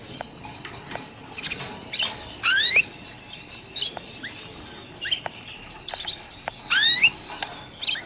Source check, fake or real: fake